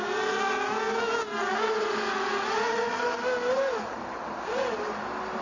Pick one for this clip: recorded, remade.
recorded